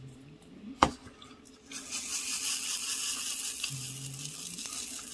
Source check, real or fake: real